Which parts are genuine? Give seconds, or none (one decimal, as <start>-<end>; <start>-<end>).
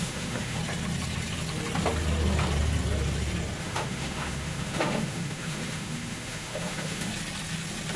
0.6-3.6; 7.1-8.0